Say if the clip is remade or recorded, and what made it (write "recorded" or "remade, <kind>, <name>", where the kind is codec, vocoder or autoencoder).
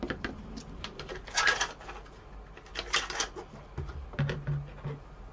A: recorded